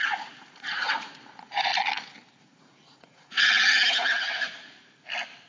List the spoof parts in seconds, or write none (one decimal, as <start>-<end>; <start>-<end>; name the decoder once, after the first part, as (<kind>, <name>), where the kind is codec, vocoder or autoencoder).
0.0-1.7 (vocoder, Vocos); 2.4-3.5